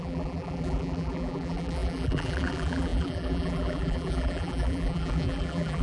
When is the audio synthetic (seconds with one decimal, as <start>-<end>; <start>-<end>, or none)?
0.0-5.8